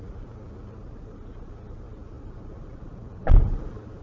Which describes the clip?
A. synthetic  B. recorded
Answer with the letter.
B